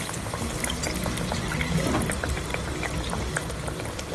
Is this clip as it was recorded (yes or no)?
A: yes